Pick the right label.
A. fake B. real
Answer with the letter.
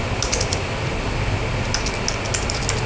B